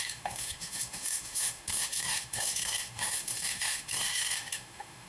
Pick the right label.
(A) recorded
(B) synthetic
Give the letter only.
B